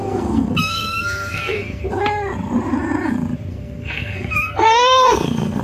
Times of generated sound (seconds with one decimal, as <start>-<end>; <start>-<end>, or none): 0.0-1.8; 3.5-5.6